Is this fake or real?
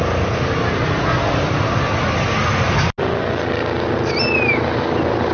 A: real